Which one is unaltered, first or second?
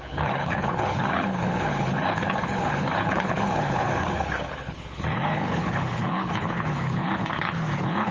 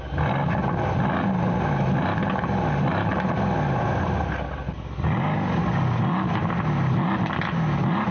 second